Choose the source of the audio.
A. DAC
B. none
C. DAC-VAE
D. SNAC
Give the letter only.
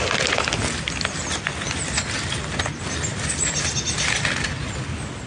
B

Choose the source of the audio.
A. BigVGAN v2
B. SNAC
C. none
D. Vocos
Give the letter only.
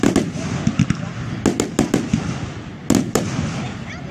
C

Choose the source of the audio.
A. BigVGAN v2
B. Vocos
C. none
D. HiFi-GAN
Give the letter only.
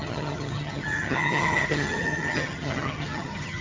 D